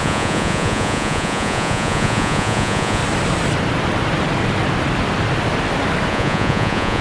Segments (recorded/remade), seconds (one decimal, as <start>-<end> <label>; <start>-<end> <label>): 0.0-3.0 remade; 3.0-6.1 recorded; 6.1-7.0 remade